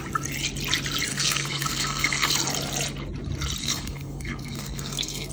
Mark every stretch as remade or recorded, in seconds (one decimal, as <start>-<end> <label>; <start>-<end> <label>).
0.0-1.1 recorded; 1.1-2.3 remade; 2.3-3.6 recorded; 3.6-5.3 remade